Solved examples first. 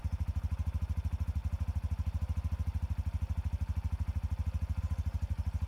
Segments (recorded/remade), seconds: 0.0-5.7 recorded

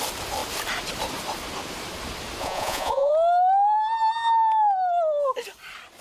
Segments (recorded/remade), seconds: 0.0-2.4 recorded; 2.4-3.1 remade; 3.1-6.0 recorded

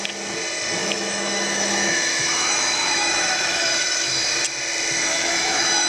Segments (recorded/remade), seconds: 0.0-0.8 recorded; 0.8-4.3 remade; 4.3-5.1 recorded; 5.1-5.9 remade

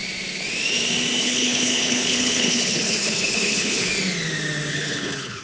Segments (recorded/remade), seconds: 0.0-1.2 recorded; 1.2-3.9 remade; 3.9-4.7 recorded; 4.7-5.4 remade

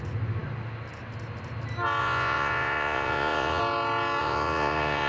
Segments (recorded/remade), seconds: 0.0-2.0 recorded; 2.0-3.6 remade; 3.6-4.2 recorded; 4.2-5.1 remade